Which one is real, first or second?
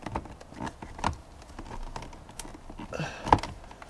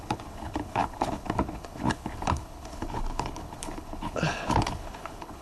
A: first